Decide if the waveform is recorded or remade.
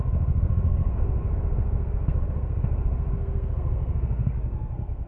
remade